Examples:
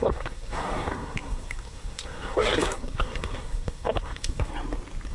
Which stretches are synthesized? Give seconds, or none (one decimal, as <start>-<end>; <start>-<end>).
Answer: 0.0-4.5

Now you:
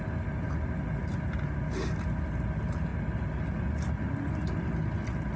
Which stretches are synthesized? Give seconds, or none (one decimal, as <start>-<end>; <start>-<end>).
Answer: none

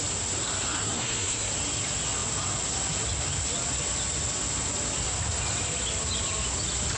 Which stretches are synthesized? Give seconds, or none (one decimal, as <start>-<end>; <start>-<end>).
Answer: 0.8-1.5